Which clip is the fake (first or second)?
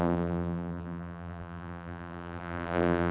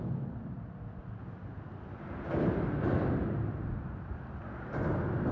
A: first